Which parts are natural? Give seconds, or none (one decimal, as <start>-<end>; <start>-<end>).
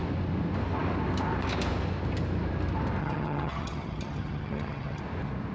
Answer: 0.0-3.0; 5.0-5.5